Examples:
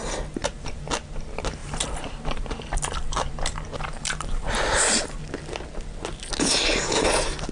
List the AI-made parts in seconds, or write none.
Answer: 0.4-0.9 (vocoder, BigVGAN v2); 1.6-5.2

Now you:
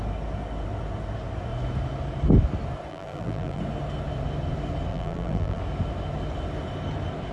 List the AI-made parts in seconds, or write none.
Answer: 2.9-3.6 (vocoder, BigVGAN v2); 4.9-5.6

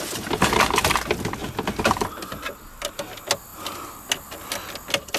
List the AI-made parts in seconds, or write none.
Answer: 1.4-3.0 (vocoder, BigVGAN v2)

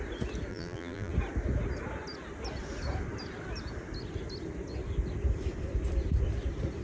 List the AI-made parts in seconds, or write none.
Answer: 0.5-1.1 (vocoder, BigVGAN v2)

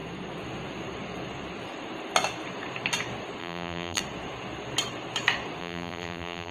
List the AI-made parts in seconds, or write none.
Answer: 3.4-4.0 (vocoder, BigVGAN v2); 5.6-6.5